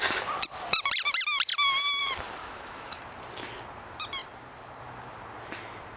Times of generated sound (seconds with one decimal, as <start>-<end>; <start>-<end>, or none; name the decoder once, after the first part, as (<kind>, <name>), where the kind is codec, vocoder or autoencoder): 2.4-3.0 (autoencoder, DAC-VAE)

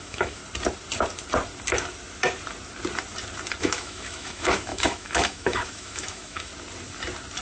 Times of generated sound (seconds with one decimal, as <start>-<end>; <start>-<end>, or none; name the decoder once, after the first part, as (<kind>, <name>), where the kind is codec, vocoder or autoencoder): 0.0-0.4 (autoencoder, DAC-VAE); 3.6-6.5

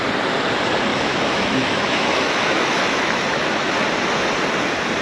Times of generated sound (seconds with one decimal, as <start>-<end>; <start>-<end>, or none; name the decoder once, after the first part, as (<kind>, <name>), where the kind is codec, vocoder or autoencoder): 0.9-3.7 (autoencoder, DAC-VAE)

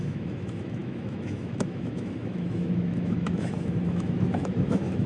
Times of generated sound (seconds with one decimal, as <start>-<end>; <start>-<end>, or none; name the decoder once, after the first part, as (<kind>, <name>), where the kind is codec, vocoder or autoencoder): 0.0-5.1 (autoencoder, DAC-VAE)

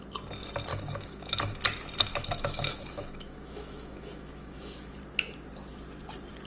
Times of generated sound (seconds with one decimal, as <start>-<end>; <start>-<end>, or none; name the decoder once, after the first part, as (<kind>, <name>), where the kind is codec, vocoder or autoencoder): 0.7-1.6 (autoencoder, DAC-VAE); 2.1-5.0

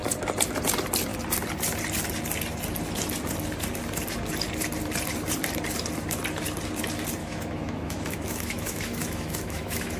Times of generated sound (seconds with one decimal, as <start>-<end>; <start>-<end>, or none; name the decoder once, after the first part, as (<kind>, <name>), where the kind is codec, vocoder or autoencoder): 7.2-10.0 (autoencoder, DAC-VAE)

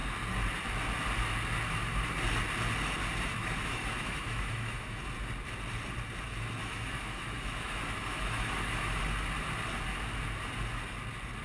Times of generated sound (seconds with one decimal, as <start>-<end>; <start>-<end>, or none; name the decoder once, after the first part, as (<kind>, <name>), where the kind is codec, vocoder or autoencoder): 3.3-5.0 (autoencoder, DAC-VAE); 6.6-9.0

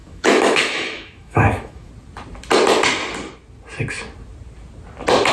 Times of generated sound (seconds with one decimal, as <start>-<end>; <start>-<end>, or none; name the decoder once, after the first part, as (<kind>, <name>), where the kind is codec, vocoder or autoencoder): 0.0-1.9 (autoencoder, DAC-VAE)